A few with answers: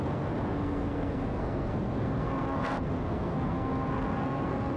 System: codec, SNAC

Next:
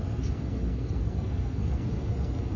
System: codec, SNAC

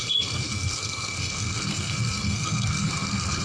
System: codec, SNAC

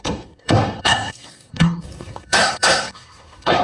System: codec, SNAC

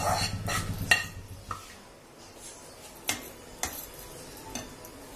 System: none